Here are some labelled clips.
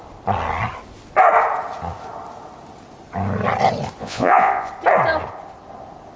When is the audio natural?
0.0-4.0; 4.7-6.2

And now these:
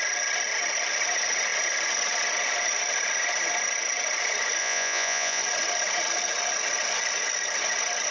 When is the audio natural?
0.0-4.6; 5.4-8.1